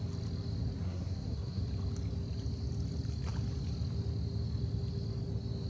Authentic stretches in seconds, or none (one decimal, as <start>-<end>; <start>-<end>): 0.0-0.8; 1.6-5.7